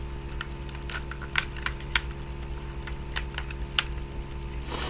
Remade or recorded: recorded